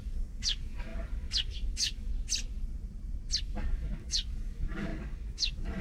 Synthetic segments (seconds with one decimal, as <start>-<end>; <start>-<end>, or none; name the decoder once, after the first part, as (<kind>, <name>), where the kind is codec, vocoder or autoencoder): 0.0-2.1 (codec, DAC); 3.4-5.8